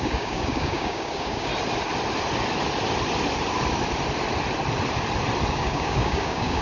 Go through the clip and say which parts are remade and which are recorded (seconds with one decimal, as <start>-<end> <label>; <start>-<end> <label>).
0.0-1.5 remade; 1.5-5.5 recorded; 5.5-6.6 remade